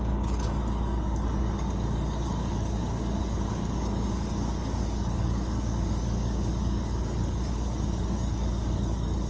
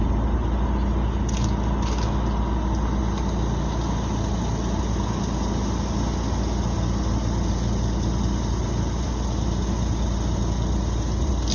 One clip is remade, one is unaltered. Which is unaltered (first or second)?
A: second